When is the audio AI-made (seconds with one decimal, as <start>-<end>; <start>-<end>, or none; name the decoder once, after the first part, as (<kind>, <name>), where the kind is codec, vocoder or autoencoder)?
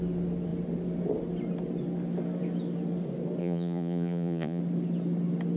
3.4-4.6 (vocoder, Vocos)